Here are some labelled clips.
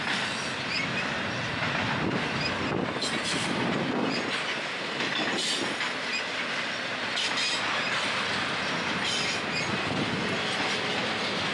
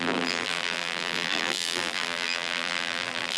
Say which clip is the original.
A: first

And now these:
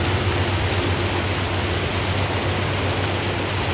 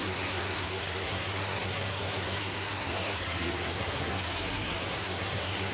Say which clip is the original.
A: first